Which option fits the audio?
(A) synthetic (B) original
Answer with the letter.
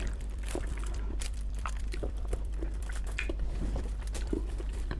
A